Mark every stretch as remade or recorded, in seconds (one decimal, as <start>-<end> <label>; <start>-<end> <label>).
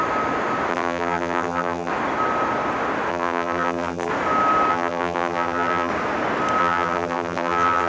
0.0-0.7 recorded; 0.7-1.9 remade; 1.9-3.1 recorded; 3.1-4.1 remade; 4.1-4.7 recorded; 4.7-5.9 remade; 5.9-6.6 recorded; 6.6-7.9 remade